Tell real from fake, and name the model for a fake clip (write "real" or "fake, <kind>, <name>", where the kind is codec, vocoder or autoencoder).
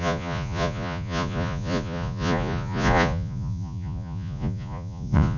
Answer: fake, vocoder, Vocos